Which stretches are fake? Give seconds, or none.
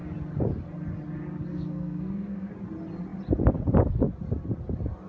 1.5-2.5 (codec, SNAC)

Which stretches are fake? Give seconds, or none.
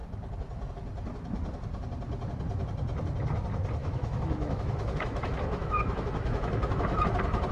3.8-7.0 (autoencoder, DAC-VAE)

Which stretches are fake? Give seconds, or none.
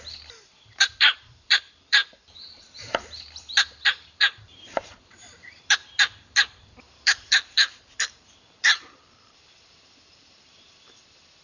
0.0-11.4 (vocoder, BigVGAN v2)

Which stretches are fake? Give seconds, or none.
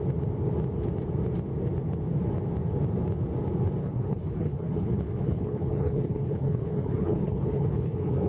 3.8-8.3 (codec, HILCodec)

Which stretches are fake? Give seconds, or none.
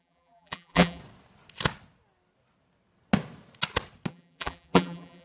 0.0-1.0 (vocoder, BigVGAN v2); 4.1-5.2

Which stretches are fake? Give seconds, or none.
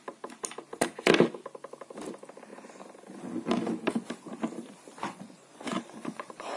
5.0-6.6 (vocoder, Vocos)